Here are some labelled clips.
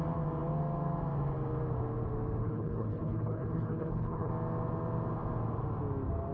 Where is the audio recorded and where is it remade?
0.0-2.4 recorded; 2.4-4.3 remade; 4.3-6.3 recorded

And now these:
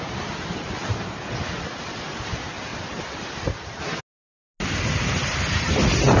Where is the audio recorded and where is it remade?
0.0-6.2 recorded

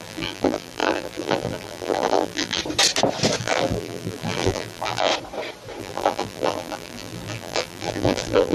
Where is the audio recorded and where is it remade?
0.0-2.6 remade; 2.6-3.4 recorded; 3.4-5.1 remade; 5.1-5.8 recorded; 5.8-8.5 remade

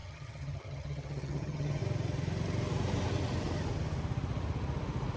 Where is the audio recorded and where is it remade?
0.0-1.8 remade; 1.8-5.2 recorded

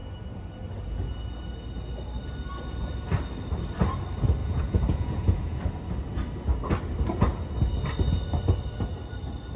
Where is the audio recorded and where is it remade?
0.0-4.4 recorded; 4.4-5.7 remade; 5.7-9.6 recorded

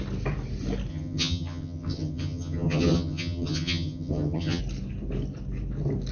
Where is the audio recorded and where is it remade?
0.0-0.9 recorded; 0.9-4.6 remade; 4.6-6.1 recorded